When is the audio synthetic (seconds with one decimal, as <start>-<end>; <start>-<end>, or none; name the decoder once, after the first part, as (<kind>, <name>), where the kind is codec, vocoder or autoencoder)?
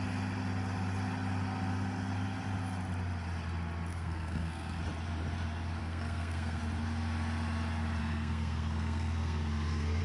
3.9-4.8 (codec, SNAC); 5.8-6.6; 8.0-10.0